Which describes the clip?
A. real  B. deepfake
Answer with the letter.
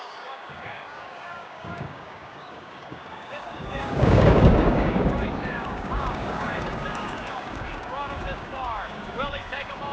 B